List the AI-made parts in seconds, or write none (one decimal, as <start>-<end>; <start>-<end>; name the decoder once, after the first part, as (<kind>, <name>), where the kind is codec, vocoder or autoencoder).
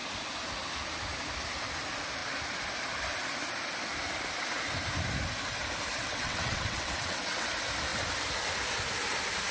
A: 6.0-7.5 (vocoder, WaveNeXt)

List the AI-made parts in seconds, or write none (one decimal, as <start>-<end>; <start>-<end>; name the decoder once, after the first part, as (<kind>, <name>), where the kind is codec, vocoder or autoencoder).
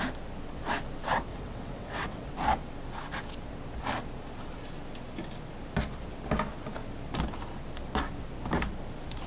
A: 1.3-2.3 (vocoder, WaveNeXt)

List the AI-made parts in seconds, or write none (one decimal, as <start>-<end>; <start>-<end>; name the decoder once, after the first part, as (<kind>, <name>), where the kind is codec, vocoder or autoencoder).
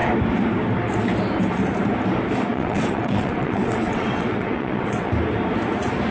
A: 2.5-5.1 (vocoder, WaveNeXt)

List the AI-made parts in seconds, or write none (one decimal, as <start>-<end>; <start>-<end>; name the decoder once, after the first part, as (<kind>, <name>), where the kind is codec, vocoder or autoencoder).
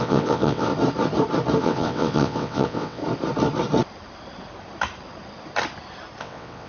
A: 0.0-0.7 (vocoder, WaveNeXt); 1.6-3.0; 6.2-6.7